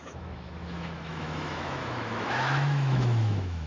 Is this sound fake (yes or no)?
yes